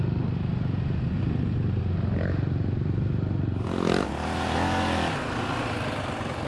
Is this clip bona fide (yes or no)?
yes